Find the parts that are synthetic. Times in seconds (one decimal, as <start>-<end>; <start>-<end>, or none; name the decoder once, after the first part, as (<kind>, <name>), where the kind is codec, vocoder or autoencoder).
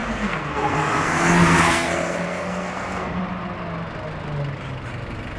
0.0-3.2 (codec, SNAC)